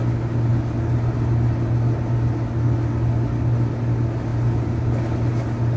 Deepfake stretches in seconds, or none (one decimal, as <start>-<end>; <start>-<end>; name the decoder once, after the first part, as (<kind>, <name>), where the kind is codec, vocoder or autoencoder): none